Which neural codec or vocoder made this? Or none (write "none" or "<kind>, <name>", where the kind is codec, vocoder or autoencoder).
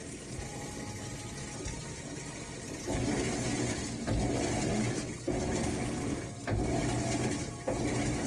none